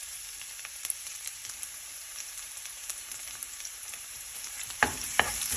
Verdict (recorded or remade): remade